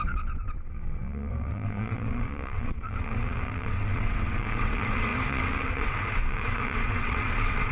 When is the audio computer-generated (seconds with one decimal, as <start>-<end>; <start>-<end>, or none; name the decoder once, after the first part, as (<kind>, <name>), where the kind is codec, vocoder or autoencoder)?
0.0-7.7 (vocoder, WaveNeXt)